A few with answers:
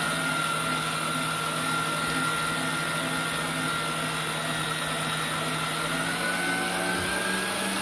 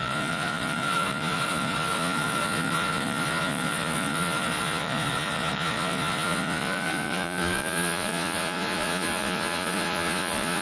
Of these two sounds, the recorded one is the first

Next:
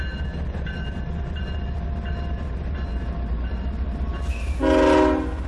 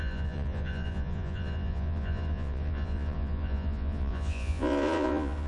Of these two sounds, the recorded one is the first